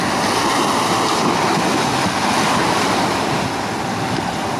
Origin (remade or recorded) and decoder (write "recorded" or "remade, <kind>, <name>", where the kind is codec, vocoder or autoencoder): recorded